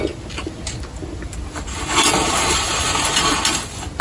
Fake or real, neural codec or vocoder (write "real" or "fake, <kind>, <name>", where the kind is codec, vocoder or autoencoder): real